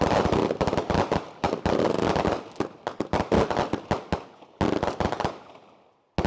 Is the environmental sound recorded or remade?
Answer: recorded